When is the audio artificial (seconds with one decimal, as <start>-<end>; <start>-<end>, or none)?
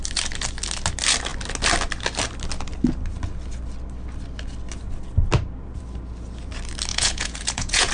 6.9-7.9